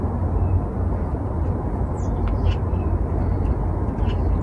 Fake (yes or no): no